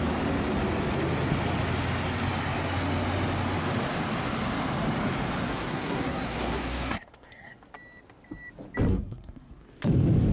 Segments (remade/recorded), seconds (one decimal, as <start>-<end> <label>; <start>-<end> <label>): 0.0-5.5 recorded; 5.5-7.6 remade; 7.6-8.9 recorded; 8.9-9.5 remade; 9.5-10.3 recorded

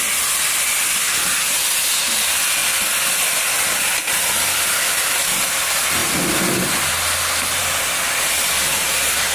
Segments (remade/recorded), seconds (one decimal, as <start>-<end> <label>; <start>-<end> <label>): 0.0-9.3 recorded

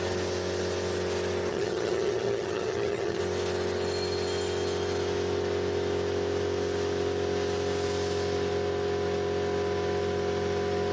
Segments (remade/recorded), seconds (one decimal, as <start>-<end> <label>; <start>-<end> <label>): 0.0-1.5 recorded; 1.5-3.2 remade; 3.2-10.9 recorded